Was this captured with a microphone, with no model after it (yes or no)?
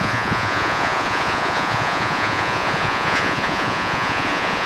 no